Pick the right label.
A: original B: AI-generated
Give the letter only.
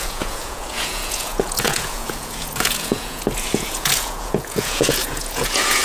B